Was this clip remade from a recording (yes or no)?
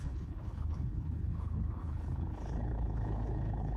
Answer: yes